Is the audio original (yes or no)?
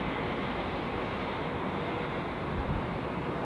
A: yes